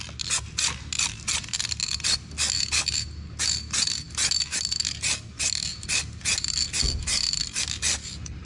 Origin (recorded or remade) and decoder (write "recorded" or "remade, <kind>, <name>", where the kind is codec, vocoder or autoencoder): recorded